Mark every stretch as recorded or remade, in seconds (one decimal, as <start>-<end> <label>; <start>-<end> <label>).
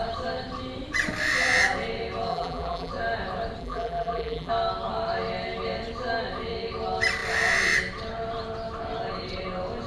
0.0-2.3 recorded; 2.3-2.9 remade; 2.9-3.6 recorded; 3.6-4.5 remade; 4.5-9.9 recorded